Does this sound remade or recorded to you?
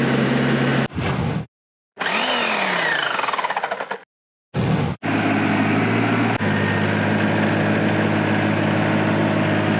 recorded